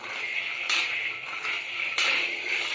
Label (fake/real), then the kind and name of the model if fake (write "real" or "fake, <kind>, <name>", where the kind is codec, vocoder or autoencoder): fake, vocoder, BigVGAN v2